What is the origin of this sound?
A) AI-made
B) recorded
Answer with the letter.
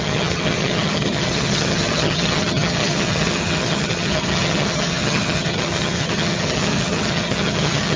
A